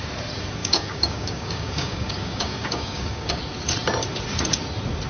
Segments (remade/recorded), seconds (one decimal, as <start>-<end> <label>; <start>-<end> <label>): 0.0-0.6 recorded; 0.6-3.4 remade; 3.4-5.1 recorded